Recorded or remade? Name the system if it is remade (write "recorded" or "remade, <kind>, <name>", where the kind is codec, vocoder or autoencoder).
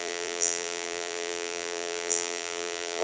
remade, vocoder, BigVGAN v2